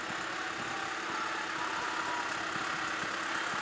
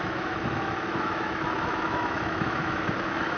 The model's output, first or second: second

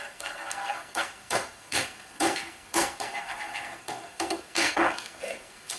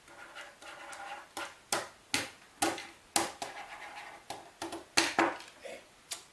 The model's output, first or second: first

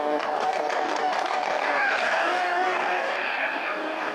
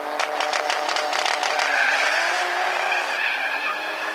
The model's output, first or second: first